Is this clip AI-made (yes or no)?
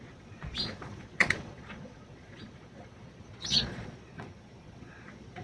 yes